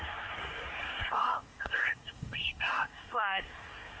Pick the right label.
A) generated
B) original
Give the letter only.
A